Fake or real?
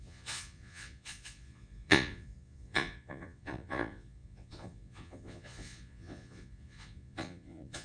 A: fake